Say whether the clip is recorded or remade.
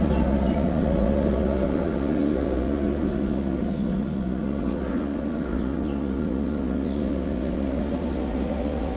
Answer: remade